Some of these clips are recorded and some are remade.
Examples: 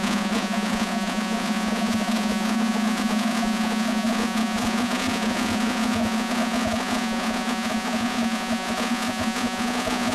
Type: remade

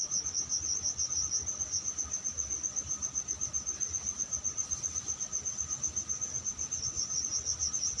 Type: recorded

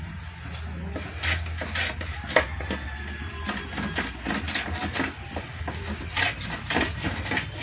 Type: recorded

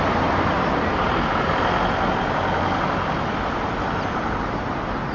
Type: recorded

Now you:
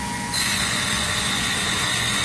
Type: remade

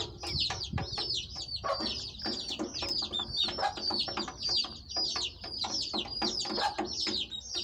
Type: recorded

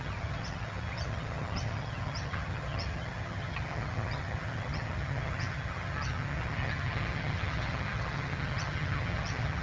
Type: remade